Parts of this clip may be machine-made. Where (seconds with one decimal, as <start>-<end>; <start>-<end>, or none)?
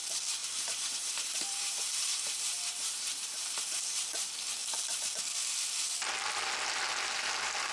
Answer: 0.4-3.8